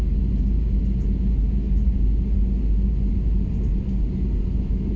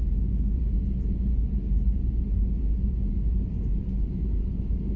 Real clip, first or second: first